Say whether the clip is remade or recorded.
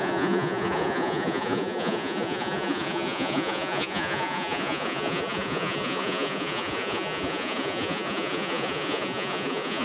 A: remade